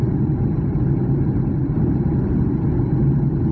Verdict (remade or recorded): recorded